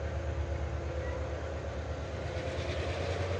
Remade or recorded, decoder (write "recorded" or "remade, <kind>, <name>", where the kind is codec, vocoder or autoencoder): recorded